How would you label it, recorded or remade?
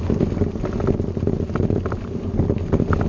recorded